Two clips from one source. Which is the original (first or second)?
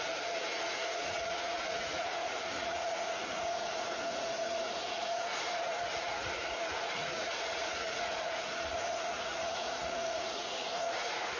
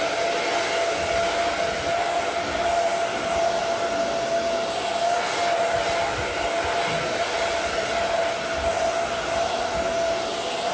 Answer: second